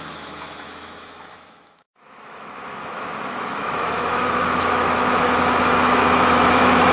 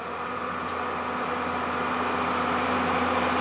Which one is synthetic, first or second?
first